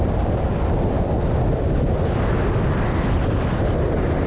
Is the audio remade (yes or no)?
no